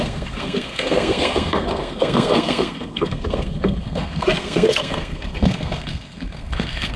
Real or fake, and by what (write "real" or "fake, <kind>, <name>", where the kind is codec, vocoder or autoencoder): fake, codec, SNAC